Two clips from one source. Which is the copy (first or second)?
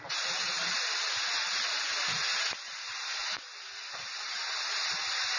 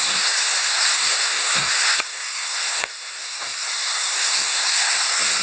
second